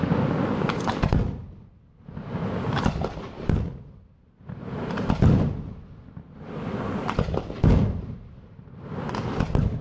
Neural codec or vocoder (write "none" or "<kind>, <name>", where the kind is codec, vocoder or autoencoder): none